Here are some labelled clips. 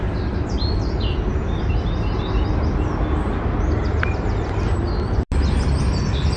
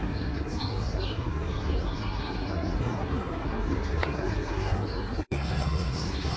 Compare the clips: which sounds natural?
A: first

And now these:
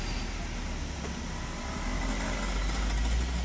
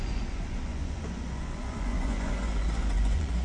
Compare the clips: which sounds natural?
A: first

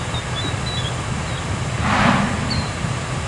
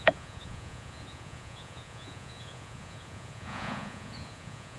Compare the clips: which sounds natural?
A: first